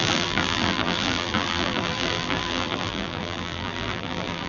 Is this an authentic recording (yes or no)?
no